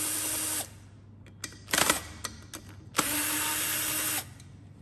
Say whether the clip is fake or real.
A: real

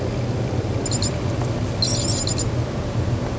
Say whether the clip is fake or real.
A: real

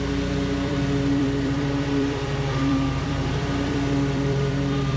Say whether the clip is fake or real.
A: fake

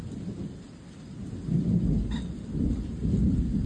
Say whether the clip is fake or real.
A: real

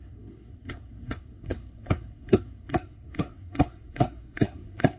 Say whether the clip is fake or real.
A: fake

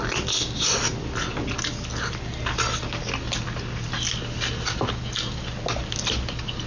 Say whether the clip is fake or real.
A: real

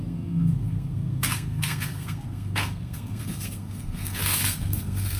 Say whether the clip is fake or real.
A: fake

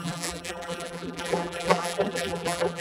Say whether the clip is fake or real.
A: fake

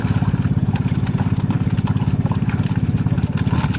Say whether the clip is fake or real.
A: fake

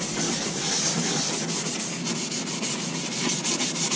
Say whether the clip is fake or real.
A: real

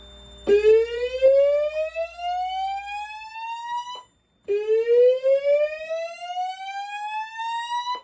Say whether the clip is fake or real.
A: real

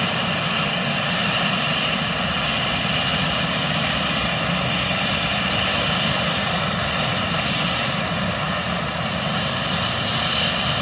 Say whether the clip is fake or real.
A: real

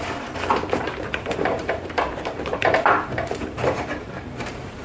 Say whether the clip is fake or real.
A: fake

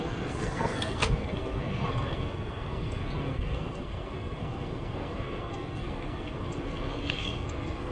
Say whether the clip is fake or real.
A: fake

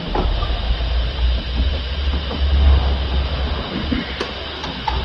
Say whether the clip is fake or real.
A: real